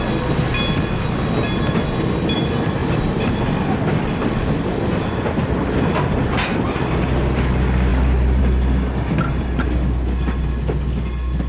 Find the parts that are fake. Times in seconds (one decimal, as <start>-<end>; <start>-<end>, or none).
2.8-7.0